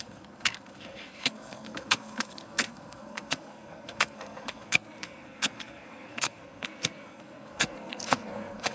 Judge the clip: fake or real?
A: fake